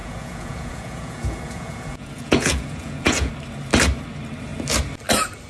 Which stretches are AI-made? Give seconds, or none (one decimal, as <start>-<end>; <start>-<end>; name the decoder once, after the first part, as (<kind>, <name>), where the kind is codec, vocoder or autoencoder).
0.0-3.3 (vocoder, Vocos)